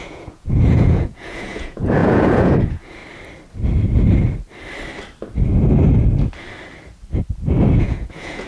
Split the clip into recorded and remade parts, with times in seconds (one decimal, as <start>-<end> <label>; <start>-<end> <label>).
0.0-3.0 remade; 3.0-7.8 recorded; 7.8-8.5 remade